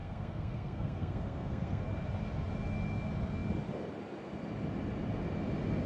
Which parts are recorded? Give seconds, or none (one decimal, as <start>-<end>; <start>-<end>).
1.8-5.9